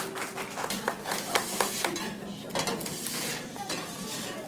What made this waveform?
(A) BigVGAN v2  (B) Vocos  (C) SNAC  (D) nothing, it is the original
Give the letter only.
D